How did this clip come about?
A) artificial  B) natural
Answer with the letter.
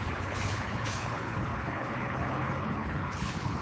A